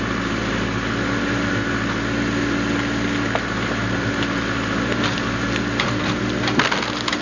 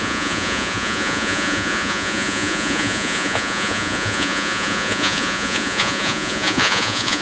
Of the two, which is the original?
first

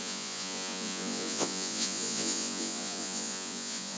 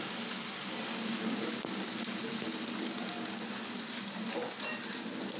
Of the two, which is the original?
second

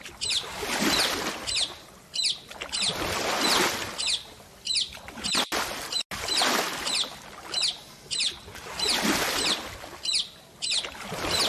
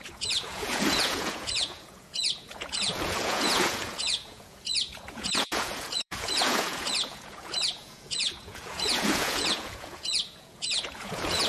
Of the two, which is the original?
first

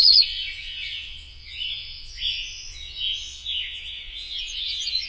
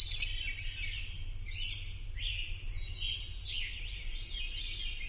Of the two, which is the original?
second